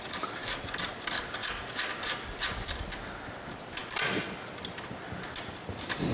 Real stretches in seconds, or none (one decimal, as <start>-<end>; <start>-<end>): 0.0-6.1